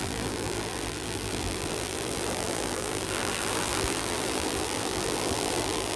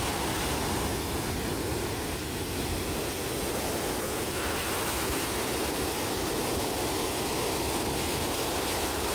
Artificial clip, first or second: first